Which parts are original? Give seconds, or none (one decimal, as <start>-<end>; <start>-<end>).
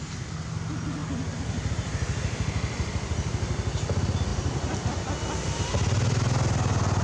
0.0-7.0